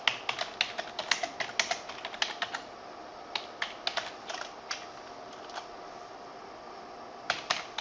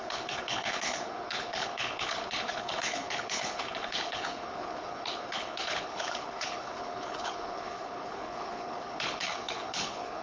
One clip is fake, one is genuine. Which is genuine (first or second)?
first